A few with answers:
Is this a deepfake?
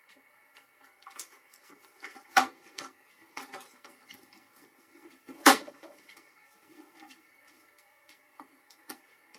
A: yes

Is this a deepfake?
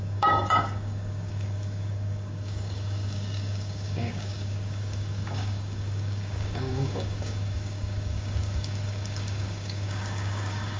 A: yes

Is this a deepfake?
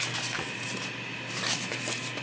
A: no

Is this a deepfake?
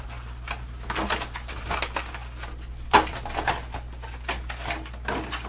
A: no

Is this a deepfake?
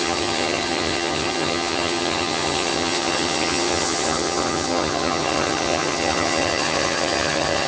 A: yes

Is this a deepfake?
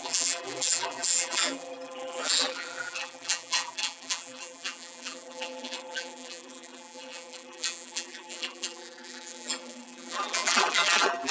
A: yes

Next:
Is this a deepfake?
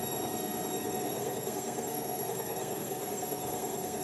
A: yes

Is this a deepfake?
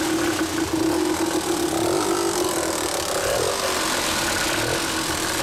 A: no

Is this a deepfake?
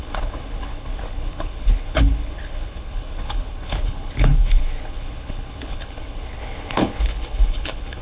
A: yes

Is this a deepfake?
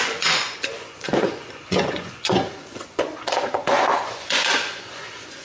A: yes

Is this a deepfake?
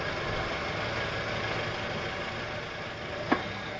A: no